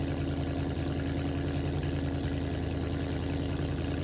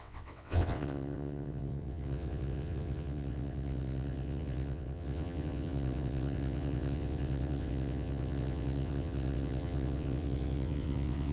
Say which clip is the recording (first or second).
first